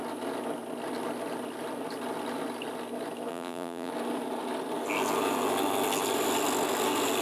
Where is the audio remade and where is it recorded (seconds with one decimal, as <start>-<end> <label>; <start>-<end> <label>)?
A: 0.0-3.3 recorded; 3.3-3.9 remade; 3.9-7.2 recorded

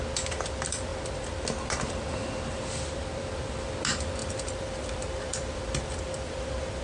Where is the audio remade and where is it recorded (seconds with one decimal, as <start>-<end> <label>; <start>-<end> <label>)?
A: 0.0-4.2 recorded; 4.2-6.8 remade

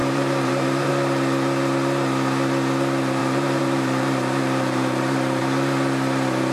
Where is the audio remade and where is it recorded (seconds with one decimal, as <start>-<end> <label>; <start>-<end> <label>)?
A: 0.0-0.9 remade; 0.9-3.2 recorded; 3.2-5.4 remade; 5.4-6.5 recorded

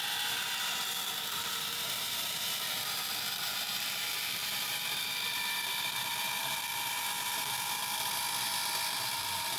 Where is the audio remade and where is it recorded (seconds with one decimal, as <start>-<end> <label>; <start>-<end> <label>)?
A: 0.0-7.8 remade; 7.8-9.0 recorded; 9.0-9.6 remade

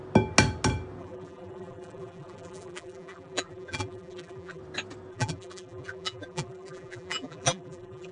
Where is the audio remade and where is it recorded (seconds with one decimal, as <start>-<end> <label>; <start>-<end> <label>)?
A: 0.0-1.0 recorded; 1.0-4.6 remade; 4.6-5.1 recorded; 5.1-8.1 remade

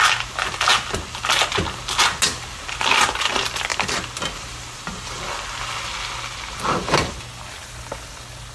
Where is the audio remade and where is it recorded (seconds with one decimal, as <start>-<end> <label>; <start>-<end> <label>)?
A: 0.0-8.5 recorded

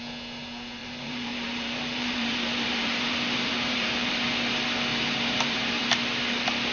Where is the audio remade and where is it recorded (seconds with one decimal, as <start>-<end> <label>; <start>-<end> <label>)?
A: 0.0-0.8 recorded; 0.8-4.1 remade; 4.1-4.9 recorded; 4.9-5.8 remade; 5.8-6.7 recorded

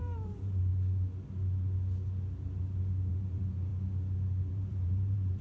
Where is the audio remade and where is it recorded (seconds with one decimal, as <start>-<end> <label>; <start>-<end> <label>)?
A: 0.0-0.7 remade; 0.7-3.1 recorded; 3.1-3.7 remade; 3.7-4.5 recorded; 4.5-5.4 remade